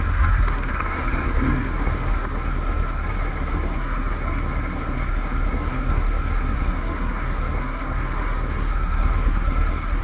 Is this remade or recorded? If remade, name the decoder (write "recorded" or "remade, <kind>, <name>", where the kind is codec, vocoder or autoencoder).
remade, codec, SNAC